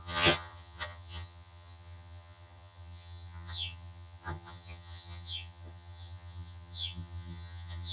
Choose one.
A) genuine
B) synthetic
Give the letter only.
B